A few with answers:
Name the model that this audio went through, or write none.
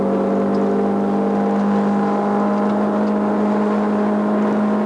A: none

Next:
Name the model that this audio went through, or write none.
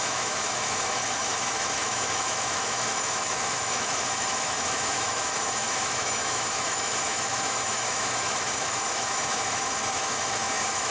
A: autoencoder, DAC-VAE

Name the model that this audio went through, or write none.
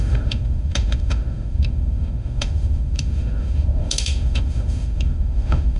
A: autoencoder, DAC-VAE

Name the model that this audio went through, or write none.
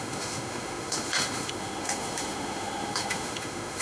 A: autoencoder, DAC-VAE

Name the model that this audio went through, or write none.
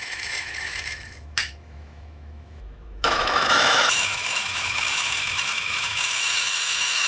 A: autoencoder, DAC-VAE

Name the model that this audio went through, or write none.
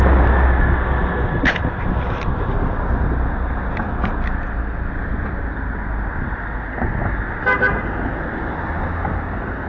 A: none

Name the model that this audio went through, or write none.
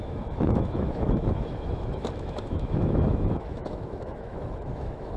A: autoencoder, DAC-VAE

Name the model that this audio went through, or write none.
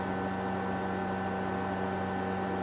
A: none